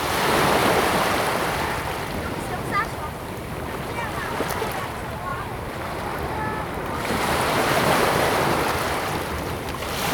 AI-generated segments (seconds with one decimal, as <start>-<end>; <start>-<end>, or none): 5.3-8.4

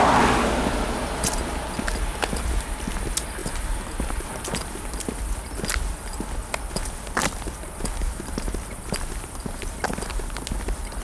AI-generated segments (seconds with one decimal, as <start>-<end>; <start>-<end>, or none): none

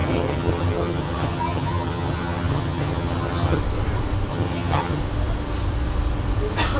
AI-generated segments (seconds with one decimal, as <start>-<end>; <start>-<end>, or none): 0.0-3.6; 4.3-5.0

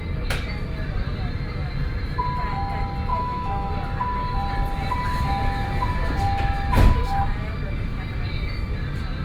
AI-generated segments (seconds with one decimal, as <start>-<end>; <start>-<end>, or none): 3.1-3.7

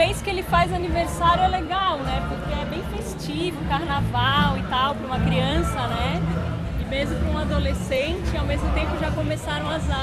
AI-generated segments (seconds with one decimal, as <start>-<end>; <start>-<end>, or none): 0.0-1.8; 3.5-10.0

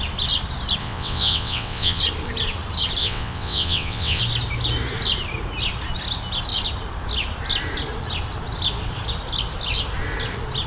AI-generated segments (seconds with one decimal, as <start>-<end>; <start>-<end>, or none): 0.8-2.0; 3.0-4.2

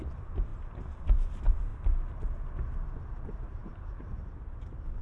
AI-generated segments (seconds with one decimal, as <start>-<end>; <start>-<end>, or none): 0.0-0.5; 1.0-1.7; 3.0-5.0

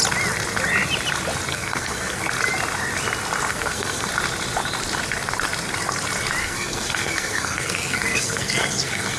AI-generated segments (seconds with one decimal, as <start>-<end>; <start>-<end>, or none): 1.5-2.2; 3.5-4.1; 6.4-9.2